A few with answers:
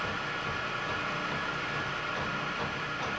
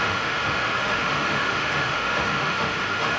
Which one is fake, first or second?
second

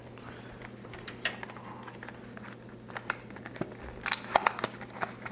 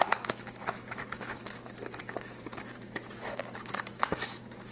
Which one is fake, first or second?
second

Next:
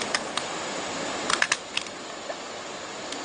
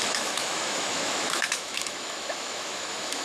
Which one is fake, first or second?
second